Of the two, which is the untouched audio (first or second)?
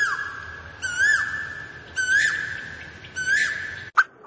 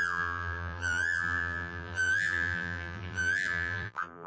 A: first